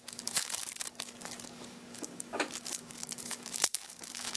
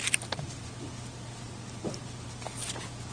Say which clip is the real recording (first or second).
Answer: second